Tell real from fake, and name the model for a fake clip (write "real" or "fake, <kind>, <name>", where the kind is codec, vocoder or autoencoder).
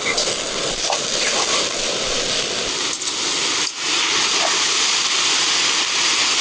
real